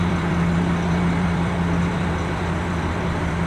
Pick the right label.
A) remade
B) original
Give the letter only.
A